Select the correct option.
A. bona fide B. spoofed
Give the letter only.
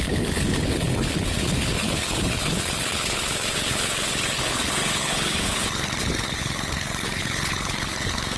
B